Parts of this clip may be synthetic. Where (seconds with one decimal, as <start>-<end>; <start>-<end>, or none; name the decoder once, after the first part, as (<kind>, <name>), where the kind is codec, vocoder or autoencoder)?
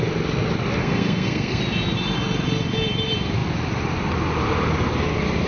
0.8-1.6 (codec, SNAC)